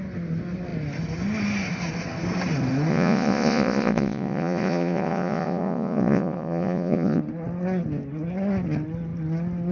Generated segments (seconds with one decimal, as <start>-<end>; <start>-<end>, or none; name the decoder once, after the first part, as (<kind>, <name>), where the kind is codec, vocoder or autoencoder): 2.9-7.2 (vocoder, Vocos)